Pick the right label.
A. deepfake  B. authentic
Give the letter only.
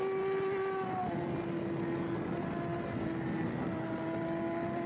B